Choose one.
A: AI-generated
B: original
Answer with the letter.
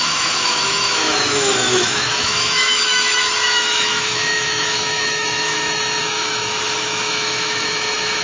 A